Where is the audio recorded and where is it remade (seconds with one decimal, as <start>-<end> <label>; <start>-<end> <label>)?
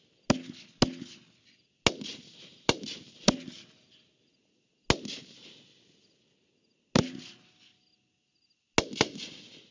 0.0-2.1 recorded; 2.1-3.9 remade; 3.9-9.7 recorded